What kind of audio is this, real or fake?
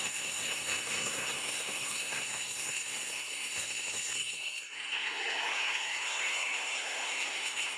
fake